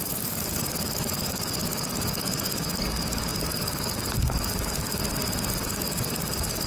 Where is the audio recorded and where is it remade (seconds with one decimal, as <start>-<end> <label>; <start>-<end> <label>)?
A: 0.0-5.0 remade; 5.0-5.5 recorded; 5.5-6.7 remade